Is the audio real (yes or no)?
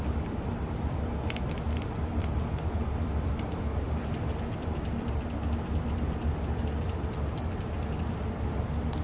no